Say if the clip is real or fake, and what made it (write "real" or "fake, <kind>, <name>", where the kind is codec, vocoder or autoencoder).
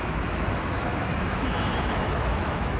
fake, autoencoder, DAC-VAE